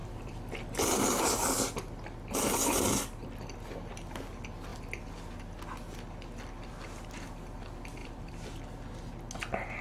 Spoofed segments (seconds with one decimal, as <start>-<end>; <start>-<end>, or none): 0.0-0.9; 8.0-8.6